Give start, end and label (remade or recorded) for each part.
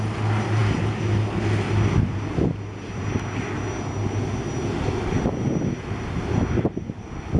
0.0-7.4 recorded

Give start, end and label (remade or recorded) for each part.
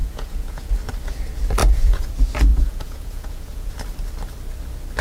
0.0-0.7 remade; 0.7-1.6 recorded; 1.6-2.1 remade; 2.1-2.5 recorded; 2.5-3.7 remade; 3.7-5.0 recorded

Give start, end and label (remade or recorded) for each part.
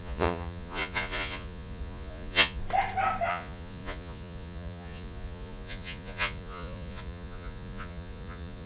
0.0-2.6 remade; 2.6-3.3 recorded; 3.3-8.7 remade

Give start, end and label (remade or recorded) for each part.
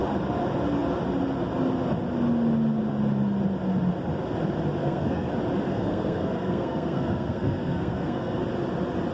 0.0-4.8 recorded; 4.8-5.3 remade; 5.3-5.7 recorded; 5.7-8.4 remade; 8.4-9.1 recorded